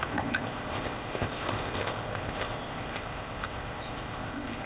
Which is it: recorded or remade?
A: remade